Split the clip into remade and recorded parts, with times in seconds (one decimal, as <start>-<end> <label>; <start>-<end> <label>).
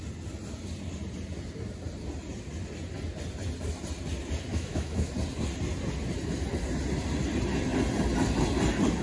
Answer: 0.0-4.5 recorded; 4.5-5.1 remade; 5.1-9.0 recorded